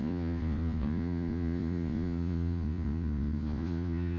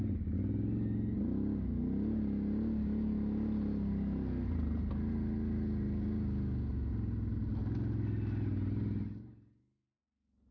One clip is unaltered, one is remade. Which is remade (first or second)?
first